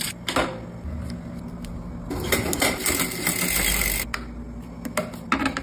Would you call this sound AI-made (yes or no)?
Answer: no